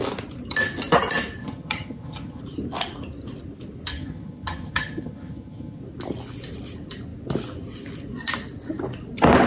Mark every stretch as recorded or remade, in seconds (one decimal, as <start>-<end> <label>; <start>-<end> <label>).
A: 0.0-1.4 recorded; 1.4-2.4 remade; 2.4-3.9 recorded; 3.9-5.8 remade; 5.8-9.5 recorded